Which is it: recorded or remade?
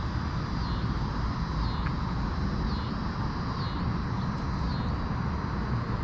recorded